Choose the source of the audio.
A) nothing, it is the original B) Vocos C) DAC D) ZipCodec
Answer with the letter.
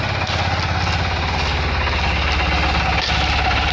A